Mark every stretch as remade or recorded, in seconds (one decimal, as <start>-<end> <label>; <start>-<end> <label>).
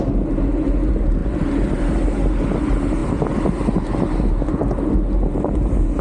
0.0-6.0 recorded